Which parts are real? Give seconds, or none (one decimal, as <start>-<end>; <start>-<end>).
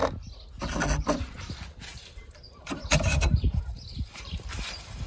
0.0-1.9